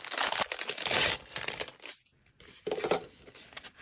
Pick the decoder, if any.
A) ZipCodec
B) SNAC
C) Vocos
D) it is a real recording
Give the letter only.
D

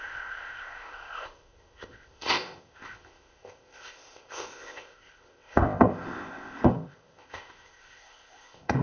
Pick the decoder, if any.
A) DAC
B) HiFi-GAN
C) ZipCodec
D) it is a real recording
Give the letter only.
C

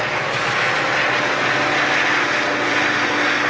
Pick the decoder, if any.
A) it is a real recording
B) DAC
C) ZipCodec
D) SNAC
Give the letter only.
A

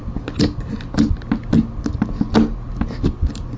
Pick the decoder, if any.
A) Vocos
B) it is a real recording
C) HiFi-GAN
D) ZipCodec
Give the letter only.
B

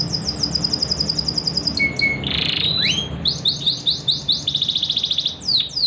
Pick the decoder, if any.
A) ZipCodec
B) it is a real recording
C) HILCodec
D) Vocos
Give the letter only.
B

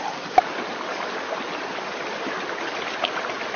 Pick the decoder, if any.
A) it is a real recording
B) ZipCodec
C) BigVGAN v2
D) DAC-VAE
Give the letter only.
A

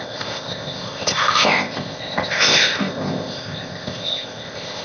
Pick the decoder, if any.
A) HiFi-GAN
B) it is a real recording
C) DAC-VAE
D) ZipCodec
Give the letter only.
D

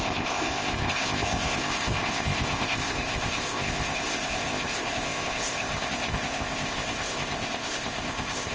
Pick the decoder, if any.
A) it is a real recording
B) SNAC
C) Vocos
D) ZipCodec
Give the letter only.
D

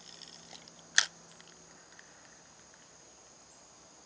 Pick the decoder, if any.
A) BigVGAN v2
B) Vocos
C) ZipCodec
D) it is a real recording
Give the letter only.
D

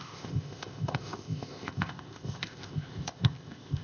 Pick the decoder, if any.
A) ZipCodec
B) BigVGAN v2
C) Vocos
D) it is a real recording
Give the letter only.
A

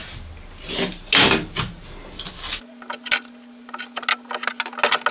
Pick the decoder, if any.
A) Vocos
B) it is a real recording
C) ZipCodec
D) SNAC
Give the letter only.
B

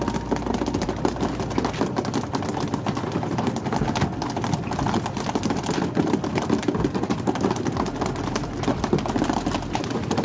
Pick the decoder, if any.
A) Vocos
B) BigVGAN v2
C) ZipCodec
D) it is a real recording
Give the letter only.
D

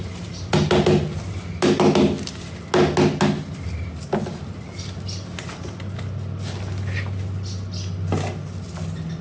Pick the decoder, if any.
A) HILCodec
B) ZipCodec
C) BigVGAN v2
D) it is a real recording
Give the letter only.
D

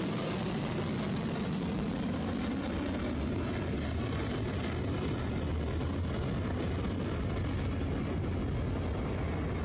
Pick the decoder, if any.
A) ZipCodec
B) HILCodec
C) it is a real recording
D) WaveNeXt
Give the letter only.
C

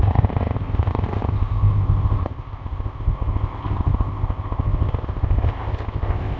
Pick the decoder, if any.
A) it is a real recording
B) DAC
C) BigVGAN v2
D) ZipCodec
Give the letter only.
D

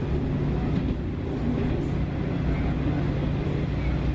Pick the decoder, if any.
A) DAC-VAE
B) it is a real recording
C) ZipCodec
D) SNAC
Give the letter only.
B